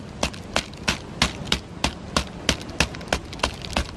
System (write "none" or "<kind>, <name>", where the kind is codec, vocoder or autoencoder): none